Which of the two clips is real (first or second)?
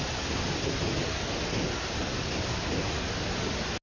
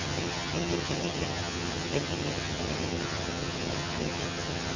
first